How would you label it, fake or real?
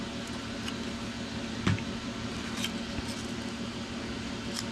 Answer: real